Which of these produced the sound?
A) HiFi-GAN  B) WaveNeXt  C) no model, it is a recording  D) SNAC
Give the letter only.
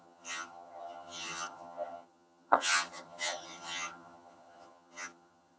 A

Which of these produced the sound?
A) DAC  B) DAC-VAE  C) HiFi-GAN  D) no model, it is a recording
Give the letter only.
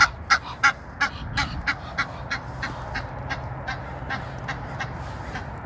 D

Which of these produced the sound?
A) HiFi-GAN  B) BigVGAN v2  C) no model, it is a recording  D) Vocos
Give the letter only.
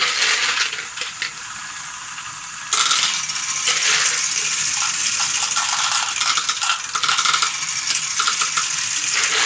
C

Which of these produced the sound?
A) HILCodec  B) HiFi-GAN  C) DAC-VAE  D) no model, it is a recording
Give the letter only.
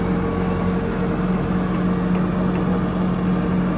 D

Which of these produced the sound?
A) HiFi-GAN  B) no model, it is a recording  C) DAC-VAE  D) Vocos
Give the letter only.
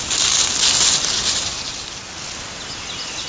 B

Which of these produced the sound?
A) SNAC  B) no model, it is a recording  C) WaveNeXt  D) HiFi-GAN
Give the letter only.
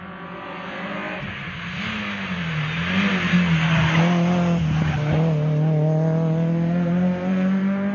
B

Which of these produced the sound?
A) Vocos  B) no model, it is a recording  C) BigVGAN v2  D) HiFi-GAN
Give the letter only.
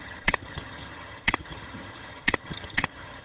D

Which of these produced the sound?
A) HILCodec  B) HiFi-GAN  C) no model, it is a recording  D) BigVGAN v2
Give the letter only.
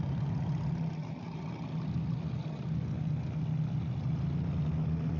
C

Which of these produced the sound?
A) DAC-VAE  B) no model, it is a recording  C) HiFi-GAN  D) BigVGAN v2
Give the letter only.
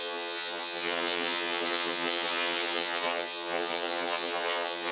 C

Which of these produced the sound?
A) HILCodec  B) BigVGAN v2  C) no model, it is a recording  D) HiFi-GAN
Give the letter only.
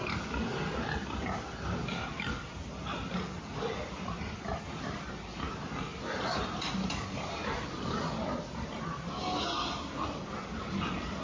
C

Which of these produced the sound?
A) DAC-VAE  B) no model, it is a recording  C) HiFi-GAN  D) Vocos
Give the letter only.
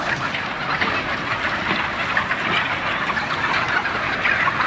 B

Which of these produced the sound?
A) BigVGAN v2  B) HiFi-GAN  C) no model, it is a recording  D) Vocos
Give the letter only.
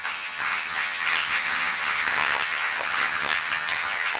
B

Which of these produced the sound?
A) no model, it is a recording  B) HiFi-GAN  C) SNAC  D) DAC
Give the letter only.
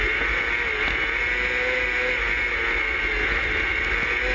A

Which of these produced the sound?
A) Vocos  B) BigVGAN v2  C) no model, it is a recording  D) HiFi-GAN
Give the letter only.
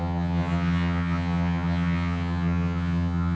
D